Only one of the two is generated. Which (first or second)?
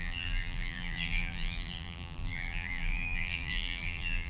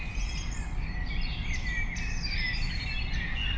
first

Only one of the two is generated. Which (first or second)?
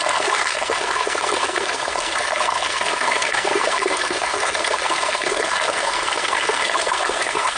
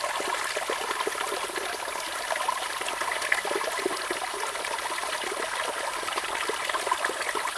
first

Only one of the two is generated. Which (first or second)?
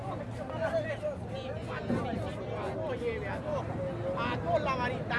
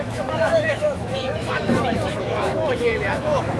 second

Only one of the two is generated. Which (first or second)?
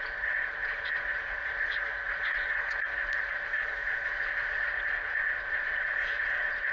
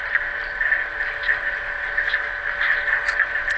first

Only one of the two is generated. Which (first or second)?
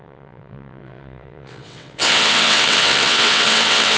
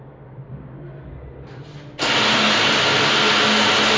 first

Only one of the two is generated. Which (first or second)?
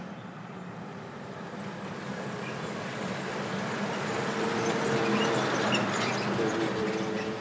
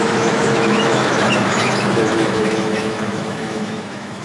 second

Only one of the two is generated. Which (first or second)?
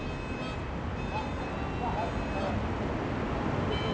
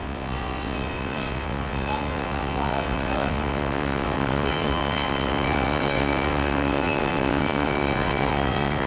second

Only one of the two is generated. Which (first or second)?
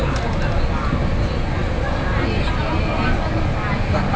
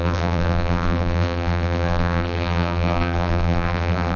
second